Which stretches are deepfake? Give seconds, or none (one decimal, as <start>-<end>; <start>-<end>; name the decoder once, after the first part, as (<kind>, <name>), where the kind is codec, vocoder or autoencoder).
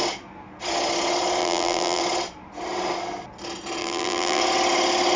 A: 1.4-2.0 (vocoder, BigVGAN v2); 3.8-4.4